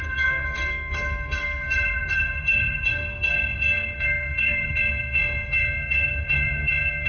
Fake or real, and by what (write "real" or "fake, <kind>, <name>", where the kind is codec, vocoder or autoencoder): fake, codec, SNAC